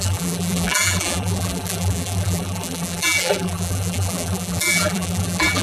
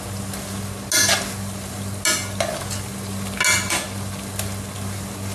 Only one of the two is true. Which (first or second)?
second